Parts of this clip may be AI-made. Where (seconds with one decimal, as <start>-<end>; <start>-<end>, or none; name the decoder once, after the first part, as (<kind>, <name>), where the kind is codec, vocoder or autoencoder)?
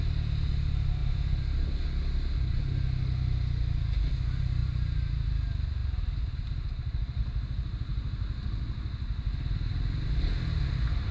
1.0-1.8 (vocoder, BigVGAN v2); 4.6-5.3; 5.8-7.2